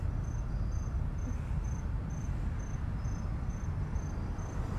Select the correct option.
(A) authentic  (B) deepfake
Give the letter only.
A